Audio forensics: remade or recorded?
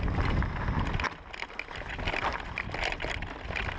recorded